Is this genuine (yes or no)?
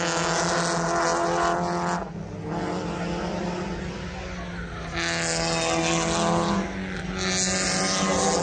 yes